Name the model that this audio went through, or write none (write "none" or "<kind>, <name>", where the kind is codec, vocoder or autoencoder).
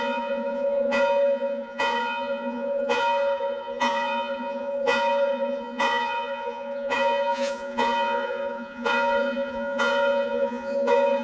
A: vocoder, Vocos